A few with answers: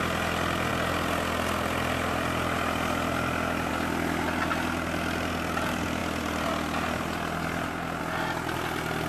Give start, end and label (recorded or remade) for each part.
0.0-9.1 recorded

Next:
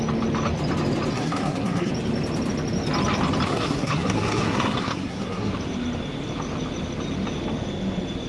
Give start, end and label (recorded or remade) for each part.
0.0-1.1 recorded; 1.1-1.9 remade; 1.9-3.5 recorded; 3.5-5.5 remade; 5.5-8.3 recorded

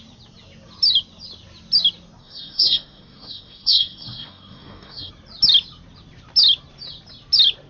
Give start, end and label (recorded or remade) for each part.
0.0-2.2 recorded; 2.2-5.1 remade; 5.1-7.7 recorded

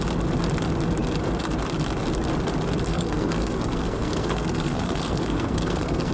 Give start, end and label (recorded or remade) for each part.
0.0-2.9 recorded; 2.9-6.1 remade

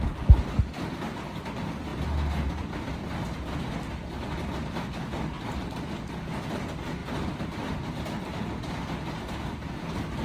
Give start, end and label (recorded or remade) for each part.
0.0-7.0 recorded; 7.0-8.9 remade; 8.9-10.2 recorded

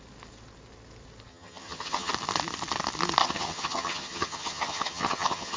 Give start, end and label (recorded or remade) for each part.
0.0-1.3 recorded; 1.3-2.1 remade; 2.1-3.2 recorded; 3.2-5.6 remade